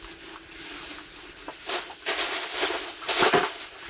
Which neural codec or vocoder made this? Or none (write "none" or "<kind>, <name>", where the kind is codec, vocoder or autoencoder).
none